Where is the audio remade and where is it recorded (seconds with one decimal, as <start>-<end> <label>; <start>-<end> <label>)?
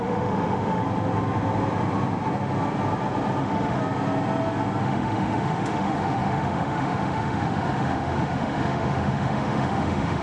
0.0-0.8 remade; 0.8-3.4 recorded; 3.4-3.8 remade; 3.8-4.8 recorded; 4.8-10.2 remade